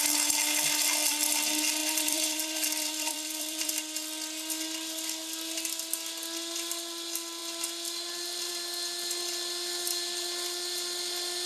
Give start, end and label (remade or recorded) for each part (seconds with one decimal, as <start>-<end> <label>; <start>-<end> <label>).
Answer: 0.0-1.8 recorded; 1.8-3.7 remade; 3.7-11.5 recorded